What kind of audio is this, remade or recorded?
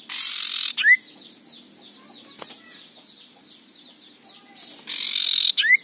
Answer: recorded